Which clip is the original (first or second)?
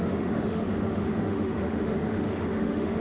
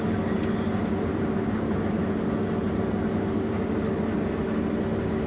second